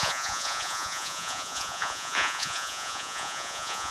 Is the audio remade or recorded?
remade